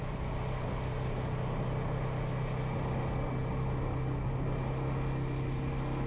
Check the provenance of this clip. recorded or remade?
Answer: recorded